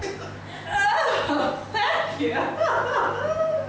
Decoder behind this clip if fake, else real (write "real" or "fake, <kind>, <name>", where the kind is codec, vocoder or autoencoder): real